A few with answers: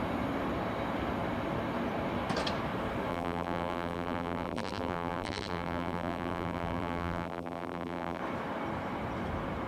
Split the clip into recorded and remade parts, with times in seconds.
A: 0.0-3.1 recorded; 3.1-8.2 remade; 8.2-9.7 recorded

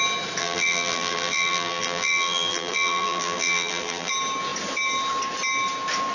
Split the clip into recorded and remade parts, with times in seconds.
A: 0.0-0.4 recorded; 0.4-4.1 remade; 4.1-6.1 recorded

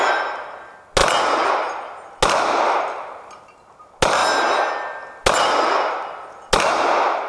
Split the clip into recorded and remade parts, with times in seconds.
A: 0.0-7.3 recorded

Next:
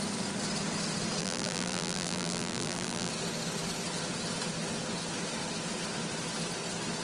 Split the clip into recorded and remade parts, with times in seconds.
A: 0.0-1.2 recorded; 1.2-3.1 remade; 3.1-7.0 recorded

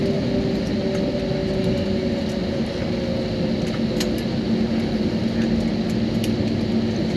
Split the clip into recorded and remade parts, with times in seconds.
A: 0.0-7.2 recorded